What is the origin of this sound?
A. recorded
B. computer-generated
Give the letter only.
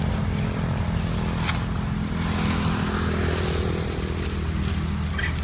A